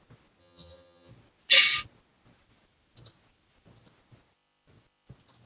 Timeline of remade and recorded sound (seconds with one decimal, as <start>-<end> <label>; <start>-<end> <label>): 0.0-0.4 recorded; 0.4-1.1 remade; 1.1-5.5 recorded